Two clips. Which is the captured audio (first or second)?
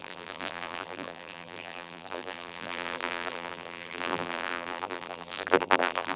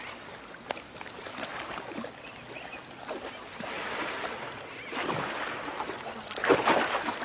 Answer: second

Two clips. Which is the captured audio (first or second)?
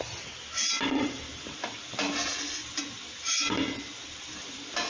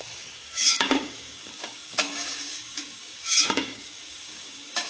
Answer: first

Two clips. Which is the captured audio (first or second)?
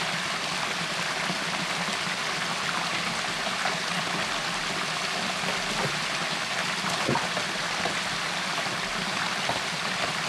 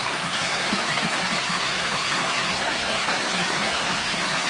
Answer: first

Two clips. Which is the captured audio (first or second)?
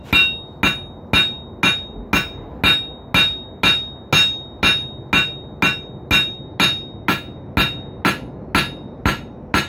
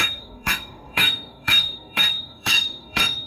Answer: first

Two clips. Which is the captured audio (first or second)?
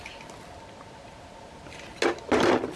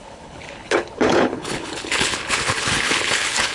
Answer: first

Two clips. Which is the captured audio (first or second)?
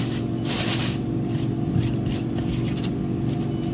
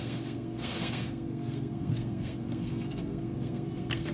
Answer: first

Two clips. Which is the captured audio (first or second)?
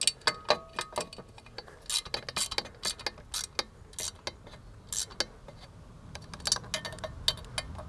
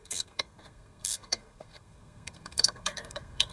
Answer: first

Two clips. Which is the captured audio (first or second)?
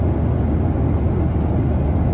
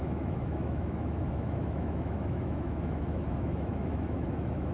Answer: first